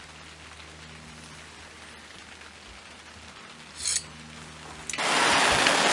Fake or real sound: real